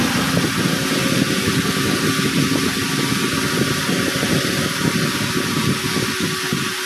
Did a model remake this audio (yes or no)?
no